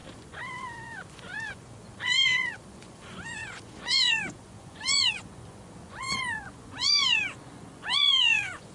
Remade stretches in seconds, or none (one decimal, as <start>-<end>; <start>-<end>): 0.0-8.7

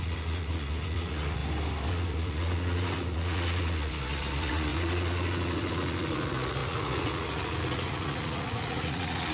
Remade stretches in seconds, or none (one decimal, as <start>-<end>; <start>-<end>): 0.0-1.4; 1.9-9.3

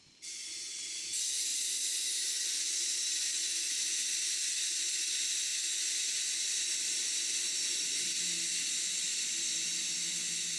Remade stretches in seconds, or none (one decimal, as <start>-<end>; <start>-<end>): none

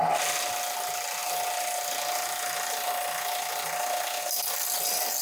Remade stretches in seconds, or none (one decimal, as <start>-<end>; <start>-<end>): none

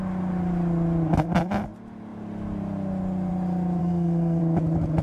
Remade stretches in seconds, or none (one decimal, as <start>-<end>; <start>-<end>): 3.8-4.4

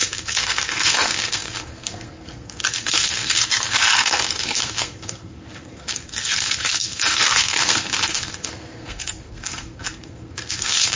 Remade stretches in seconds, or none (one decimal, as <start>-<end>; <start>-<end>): 0.0-11.0

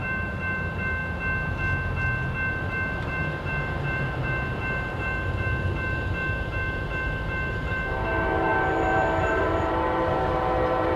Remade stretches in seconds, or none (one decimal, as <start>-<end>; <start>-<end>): 0.0-1.0; 2.5-11.0